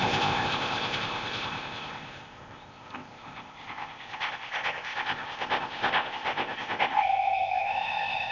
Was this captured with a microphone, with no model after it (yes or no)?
no